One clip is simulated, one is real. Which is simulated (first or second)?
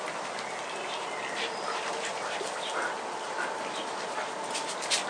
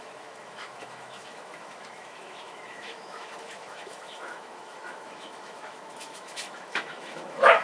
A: second